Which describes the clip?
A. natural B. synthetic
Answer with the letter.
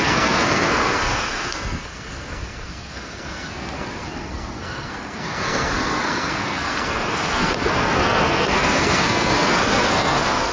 B